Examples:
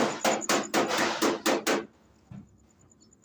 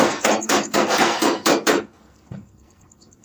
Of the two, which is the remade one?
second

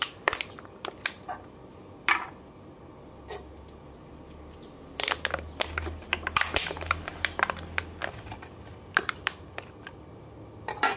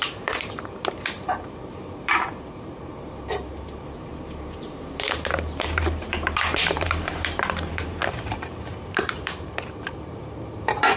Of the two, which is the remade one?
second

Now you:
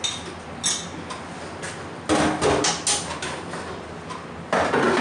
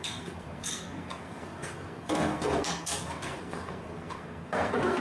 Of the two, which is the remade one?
second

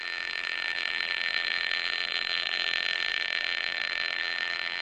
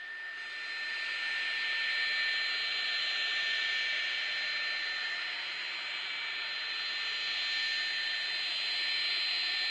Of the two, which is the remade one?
first